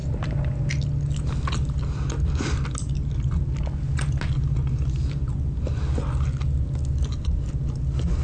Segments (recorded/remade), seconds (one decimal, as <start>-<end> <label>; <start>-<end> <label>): 0.0-0.7 remade; 0.7-8.2 recorded